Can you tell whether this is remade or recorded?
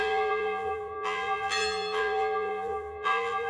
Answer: remade